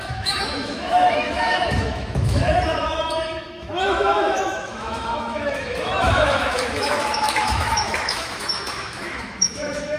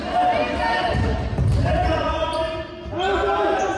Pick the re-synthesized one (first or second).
first